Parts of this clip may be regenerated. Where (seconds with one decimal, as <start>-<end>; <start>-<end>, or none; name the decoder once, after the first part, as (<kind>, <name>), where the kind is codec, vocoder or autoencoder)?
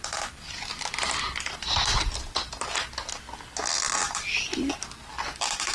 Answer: none